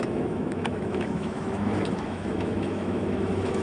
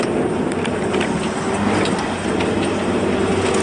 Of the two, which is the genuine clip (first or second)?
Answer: second